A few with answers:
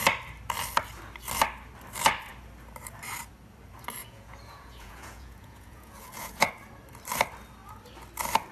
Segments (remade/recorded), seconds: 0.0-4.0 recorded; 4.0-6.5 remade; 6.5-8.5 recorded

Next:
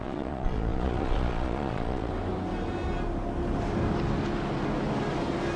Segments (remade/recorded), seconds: 0.0-2.1 remade; 2.1-5.6 recorded

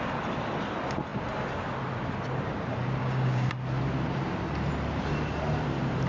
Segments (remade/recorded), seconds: 0.0-3.0 recorded; 3.0-3.5 remade; 3.5-6.1 recorded